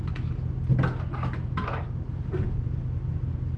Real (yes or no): yes